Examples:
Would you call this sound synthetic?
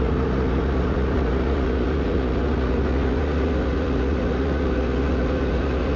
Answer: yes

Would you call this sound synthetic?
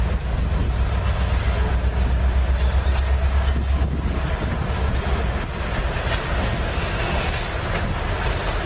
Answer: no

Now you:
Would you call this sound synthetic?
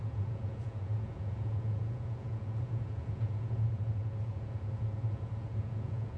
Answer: yes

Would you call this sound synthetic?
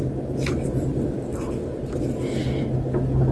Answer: no